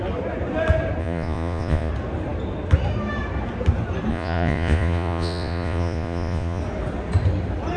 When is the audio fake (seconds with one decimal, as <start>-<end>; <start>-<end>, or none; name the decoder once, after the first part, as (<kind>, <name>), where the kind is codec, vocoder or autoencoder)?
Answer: 1.0-1.9 (vocoder, Vocos); 4.1-6.6